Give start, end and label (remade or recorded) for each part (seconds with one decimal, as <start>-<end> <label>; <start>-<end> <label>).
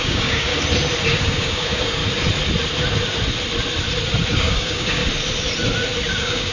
0.0-0.5 remade; 0.5-1.2 recorded; 1.2-2.0 remade; 2.0-4.3 recorded; 4.3-5.0 remade; 5.0-6.1 recorded; 6.1-6.5 remade